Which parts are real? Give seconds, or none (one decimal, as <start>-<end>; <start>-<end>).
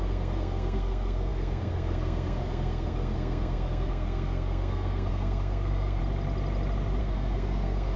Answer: 6.0-7.0